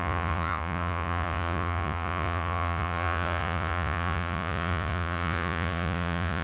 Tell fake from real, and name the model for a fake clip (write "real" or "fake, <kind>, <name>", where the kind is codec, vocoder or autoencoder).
fake, vocoder, Vocos